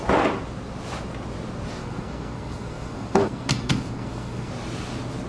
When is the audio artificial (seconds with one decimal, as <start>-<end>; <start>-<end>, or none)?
1.8-4.5